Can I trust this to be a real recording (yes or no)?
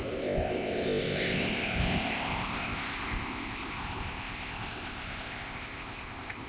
no